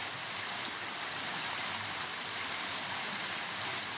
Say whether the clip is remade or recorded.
recorded